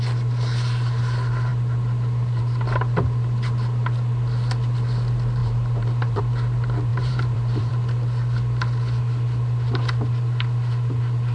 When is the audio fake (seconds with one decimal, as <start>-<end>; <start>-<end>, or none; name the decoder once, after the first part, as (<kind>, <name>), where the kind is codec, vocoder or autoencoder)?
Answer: 5.4-6.2 (vocoder, BigVGAN v2); 6.9-7.7